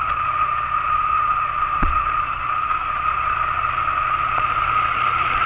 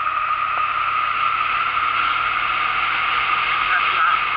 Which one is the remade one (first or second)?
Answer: first